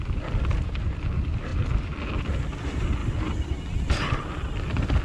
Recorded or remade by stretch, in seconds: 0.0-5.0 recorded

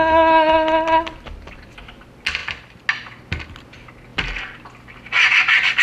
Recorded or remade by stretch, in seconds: 0.0-5.8 recorded

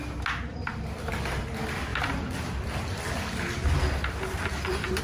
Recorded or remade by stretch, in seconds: 0.0-0.5 recorded; 0.5-1.1 remade; 1.1-1.9 recorded; 1.9-5.0 remade